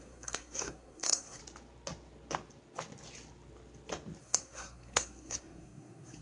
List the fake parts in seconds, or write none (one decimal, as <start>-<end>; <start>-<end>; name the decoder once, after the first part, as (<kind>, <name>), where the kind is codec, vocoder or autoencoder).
0.0-1.4 (codec, SNAC); 4.2-6.2